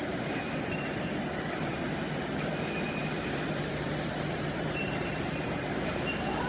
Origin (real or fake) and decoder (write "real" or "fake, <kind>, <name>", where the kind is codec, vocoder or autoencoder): fake, vocoder, BigVGAN v2